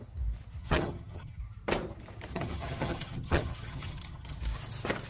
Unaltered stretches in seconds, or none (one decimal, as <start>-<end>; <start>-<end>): 0.0-0.6; 1.4-2.3; 4.4-5.1